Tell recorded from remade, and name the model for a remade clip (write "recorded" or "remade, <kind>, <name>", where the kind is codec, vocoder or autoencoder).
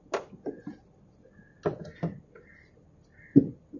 recorded